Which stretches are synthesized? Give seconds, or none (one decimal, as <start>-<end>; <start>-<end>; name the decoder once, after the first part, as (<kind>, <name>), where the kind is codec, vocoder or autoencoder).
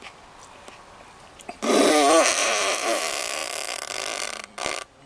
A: 2.4-3.0 (vocoder, BigVGAN v2)